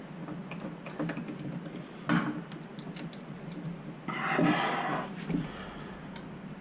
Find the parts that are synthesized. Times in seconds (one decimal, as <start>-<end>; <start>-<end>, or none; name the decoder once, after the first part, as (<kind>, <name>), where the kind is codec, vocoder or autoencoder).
none